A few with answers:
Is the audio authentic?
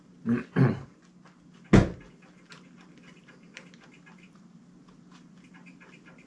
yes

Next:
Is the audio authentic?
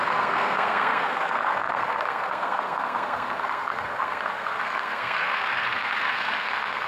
no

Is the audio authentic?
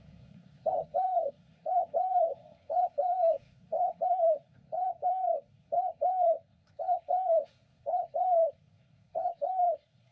no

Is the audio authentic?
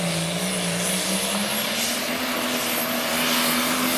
yes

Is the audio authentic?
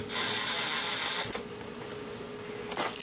yes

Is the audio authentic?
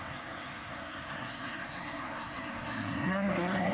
no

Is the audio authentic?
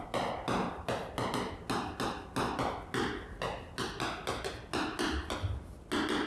yes